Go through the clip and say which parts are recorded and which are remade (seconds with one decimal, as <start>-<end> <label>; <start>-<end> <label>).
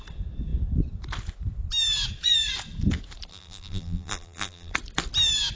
0.0-3.3 recorded; 3.3-4.7 remade; 4.7-5.6 recorded